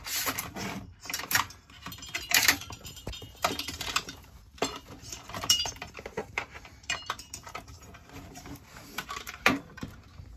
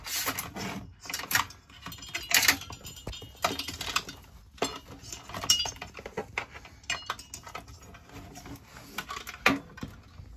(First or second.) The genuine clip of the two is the second